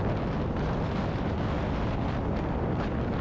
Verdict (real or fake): real